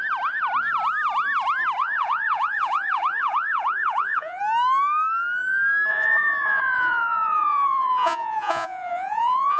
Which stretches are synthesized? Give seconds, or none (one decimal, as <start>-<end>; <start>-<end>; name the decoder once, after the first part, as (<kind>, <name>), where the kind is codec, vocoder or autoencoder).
1.8-4.4 (vocoder, Vocos); 5.9-9.6